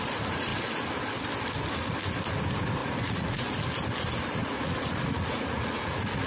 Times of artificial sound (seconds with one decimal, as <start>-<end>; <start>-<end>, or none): 2.8-3.6; 4.4-6.3